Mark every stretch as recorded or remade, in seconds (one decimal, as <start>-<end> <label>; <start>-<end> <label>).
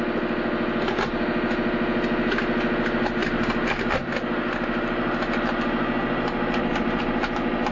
0.0-7.7 recorded